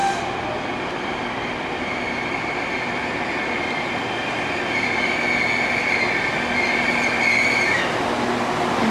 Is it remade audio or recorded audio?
recorded